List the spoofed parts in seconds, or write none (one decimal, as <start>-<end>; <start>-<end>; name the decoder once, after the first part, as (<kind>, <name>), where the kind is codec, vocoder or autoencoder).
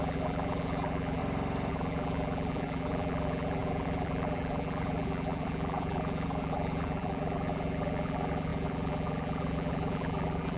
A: 0.0-1.2 (vocoder, BigVGAN v2); 1.7-10.6